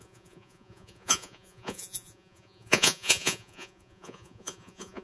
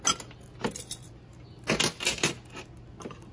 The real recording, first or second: second